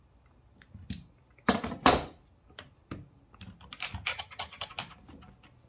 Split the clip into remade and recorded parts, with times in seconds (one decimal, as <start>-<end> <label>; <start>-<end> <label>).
0.0-4.1 recorded; 4.1-4.7 remade; 4.7-5.7 recorded